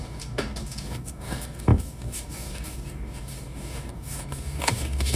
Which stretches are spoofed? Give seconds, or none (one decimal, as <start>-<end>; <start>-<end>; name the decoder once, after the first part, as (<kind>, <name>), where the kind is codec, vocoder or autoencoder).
0.0-5.2 (codec, DAC)